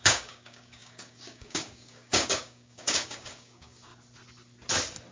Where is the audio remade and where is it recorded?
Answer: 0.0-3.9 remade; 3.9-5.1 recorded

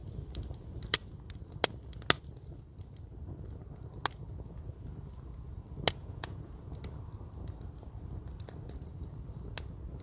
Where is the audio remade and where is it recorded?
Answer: 0.0-6.0 recorded; 6.0-6.6 remade; 6.6-10.0 recorded

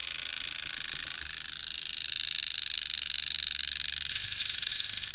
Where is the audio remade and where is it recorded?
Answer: 0.0-4.1 recorded; 4.1-5.1 remade

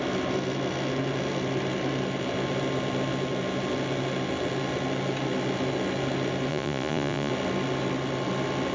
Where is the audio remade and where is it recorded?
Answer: 0.0-6.5 recorded; 6.5-7.3 remade; 7.3-8.7 recorded

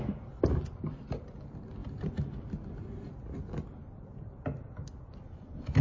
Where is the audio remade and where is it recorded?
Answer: 0.0-5.8 recorded

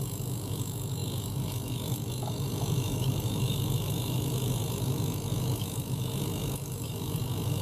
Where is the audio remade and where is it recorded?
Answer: 0.0-7.6 remade

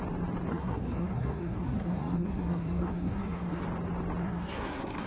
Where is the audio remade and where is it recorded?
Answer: 0.0-0.5 recorded; 0.5-3.6 remade; 3.6-4.2 recorded; 4.2-5.1 remade

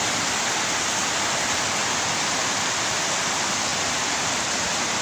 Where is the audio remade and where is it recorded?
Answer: 0.0-5.0 recorded